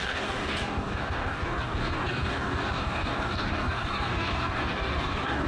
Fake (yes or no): yes